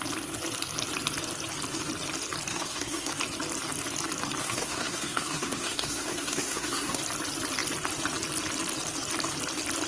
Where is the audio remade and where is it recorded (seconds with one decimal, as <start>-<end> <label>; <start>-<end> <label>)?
0.0-2.5 recorded; 2.5-3.1 remade; 3.1-4.4 recorded; 4.4-7.0 remade; 7.0-9.9 recorded